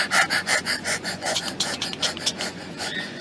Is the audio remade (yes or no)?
yes